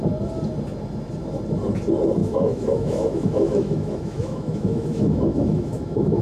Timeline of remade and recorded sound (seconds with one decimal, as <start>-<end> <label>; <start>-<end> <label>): 0.0-2.2 recorded; 2.2-6.2 remade